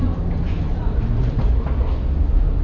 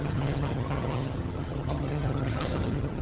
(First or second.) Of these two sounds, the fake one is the second